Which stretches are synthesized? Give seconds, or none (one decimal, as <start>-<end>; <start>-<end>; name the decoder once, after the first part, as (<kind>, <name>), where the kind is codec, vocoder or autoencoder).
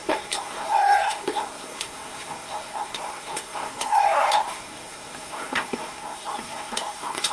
0.0-7.3 (codec, SNAC)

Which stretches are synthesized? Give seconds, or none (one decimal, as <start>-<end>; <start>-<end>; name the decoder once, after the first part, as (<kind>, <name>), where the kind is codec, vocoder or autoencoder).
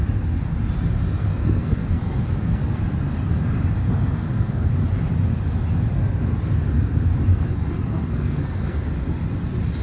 1.2-2.8 (codec, SNAC); 3.8-4.7; 7.3-8.8